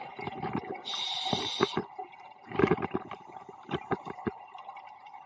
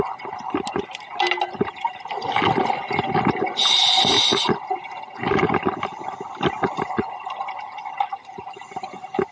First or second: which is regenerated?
first